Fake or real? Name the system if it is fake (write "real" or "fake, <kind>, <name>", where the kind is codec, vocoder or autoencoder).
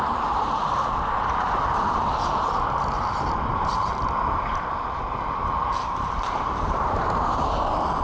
fake, vocoder, BigVGAN v2